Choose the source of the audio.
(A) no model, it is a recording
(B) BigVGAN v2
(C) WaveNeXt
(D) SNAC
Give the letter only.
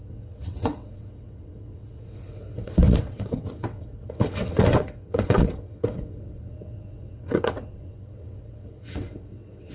C